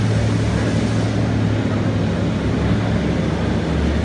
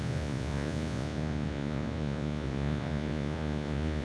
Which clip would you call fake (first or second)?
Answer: second